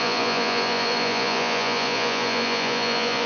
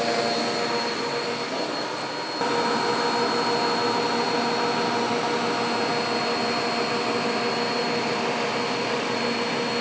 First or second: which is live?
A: second